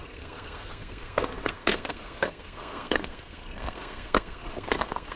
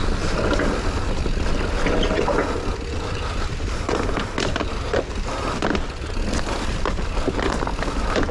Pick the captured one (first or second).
second